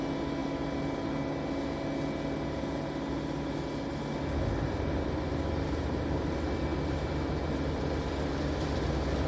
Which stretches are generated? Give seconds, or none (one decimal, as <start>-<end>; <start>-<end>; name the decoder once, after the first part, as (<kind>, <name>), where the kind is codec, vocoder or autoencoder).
none